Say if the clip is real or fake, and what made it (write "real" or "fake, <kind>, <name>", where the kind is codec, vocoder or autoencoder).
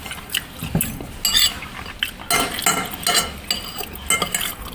real